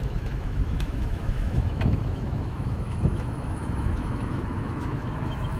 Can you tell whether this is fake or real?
fake